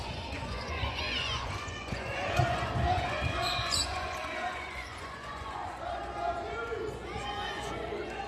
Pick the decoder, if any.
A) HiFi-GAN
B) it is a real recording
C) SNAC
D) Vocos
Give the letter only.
D